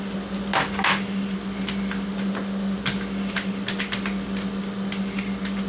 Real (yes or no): yes